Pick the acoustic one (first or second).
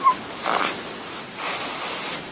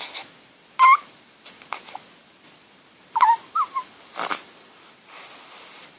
first